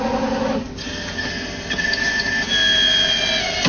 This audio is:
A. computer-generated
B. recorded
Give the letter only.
B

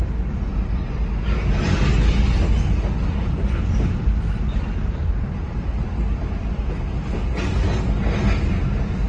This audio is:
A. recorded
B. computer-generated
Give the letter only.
A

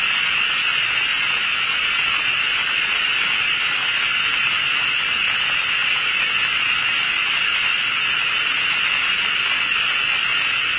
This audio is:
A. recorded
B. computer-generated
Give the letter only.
A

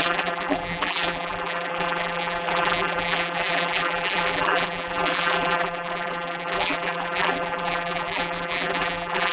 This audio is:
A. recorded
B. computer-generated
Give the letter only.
B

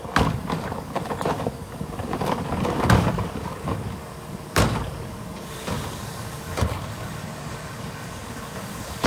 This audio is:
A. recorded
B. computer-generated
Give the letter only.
B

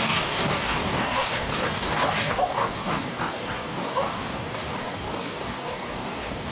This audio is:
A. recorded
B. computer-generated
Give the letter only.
B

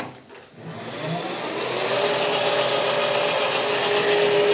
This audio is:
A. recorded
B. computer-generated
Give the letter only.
A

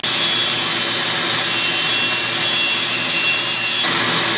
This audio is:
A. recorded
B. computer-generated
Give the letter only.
A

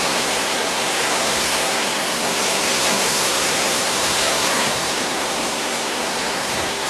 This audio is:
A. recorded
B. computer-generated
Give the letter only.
B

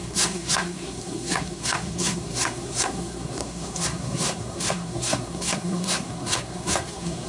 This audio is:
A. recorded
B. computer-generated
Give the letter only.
B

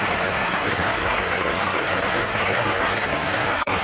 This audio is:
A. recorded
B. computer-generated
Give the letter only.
B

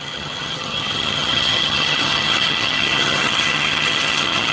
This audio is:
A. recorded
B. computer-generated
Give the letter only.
B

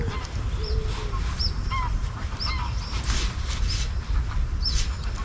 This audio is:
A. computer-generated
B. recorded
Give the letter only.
B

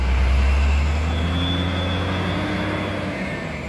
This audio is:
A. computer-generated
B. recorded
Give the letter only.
B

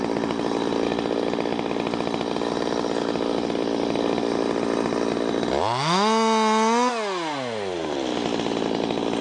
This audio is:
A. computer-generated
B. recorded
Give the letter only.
B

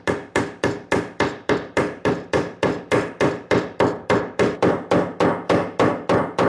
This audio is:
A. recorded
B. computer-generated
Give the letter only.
B